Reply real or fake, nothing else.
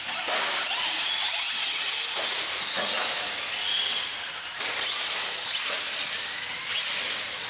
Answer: real